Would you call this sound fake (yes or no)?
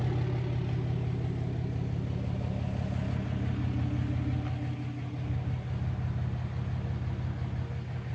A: no